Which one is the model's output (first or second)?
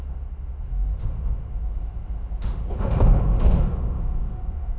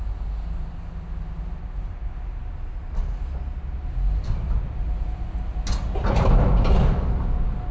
first